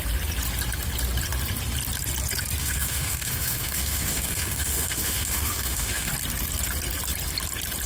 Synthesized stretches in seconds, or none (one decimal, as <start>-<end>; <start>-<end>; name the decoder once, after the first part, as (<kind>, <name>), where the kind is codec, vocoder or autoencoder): 2.6-6.1 (autoencoder, DAC-VAE)